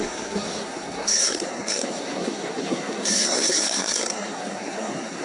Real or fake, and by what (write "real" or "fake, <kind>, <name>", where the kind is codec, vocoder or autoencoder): fake, codec, SNAC